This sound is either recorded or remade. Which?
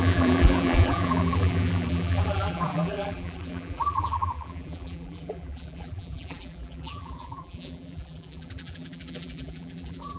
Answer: remade